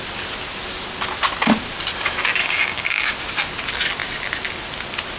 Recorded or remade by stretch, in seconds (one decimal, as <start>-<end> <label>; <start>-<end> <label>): 0.0-2.4 recorded; 2.4-3.1 remade; 3.1-5.2 recorded